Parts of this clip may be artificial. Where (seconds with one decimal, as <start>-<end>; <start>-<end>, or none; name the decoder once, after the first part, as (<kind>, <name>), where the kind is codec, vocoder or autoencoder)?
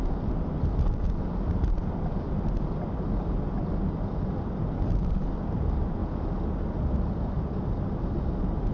none